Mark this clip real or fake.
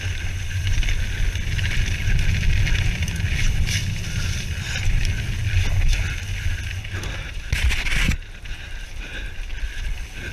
real